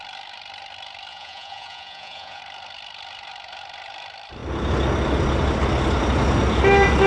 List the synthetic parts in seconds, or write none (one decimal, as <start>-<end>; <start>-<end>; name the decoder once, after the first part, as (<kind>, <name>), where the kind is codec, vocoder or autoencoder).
1.1-2.4 (vocoder, Vocos)